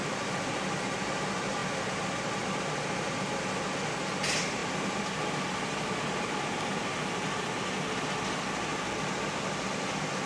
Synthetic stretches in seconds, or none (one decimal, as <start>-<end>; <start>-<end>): 4.6-6.7